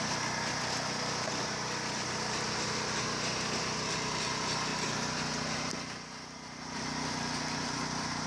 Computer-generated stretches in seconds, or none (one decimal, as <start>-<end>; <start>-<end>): none